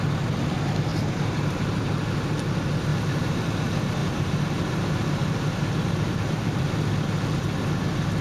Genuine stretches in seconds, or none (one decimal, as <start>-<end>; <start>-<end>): 0.0-2.9; 3.5-4.0; 6.9-8.2